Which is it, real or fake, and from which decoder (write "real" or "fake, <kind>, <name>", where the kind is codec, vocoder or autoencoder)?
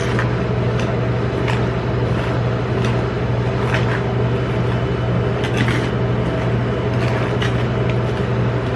real